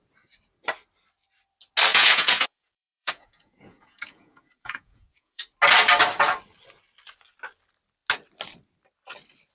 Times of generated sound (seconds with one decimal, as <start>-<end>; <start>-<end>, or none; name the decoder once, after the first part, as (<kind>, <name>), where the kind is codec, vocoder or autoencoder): 1.9-5.4 (vocoder, Vocos)